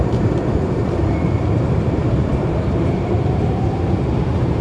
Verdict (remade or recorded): remade